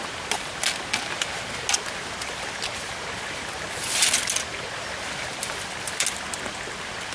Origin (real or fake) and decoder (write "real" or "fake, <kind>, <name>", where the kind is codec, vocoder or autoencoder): real